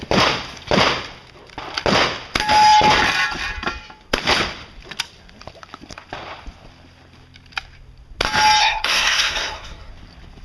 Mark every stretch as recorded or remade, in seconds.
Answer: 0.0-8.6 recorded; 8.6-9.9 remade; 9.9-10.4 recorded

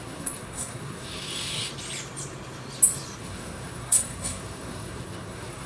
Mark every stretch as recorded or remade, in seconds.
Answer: 0.0-1.7 remade; 1.7-3.2 recorded; 3.2-5.7 remade